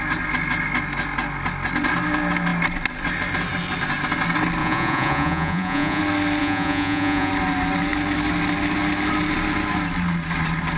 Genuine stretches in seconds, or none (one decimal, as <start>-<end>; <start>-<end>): 0.0-4.6; 6.0-6.4; 7.3-10.8